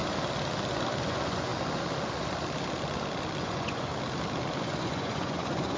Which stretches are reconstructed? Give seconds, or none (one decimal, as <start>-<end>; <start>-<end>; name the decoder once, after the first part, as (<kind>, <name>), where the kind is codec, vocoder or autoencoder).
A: 1.0-1.5 (vocoder, Vocos); 3.4-3.9; 4.6-5.8